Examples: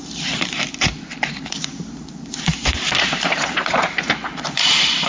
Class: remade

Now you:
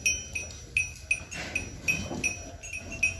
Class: recorded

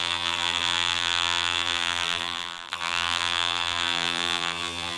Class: remade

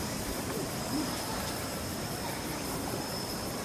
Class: remade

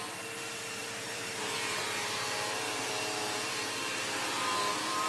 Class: remade